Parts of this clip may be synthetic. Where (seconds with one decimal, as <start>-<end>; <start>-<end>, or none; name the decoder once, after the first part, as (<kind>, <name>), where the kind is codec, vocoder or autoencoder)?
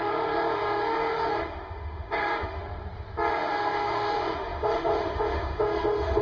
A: 0.0-2.6 (autoencoder, DAC-VAE); 3.3-6.2